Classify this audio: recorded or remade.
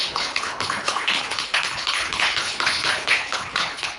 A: remade